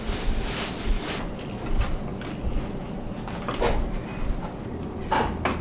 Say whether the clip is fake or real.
real